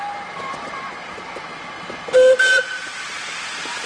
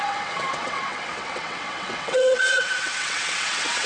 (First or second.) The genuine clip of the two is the first